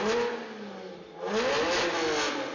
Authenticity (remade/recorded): recorded